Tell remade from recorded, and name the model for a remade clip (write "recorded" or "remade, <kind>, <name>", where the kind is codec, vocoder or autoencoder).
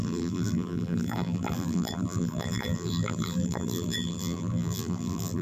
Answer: remade, vocoder, BigVGAN v2